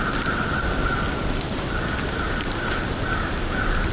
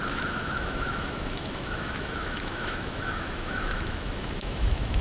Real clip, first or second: first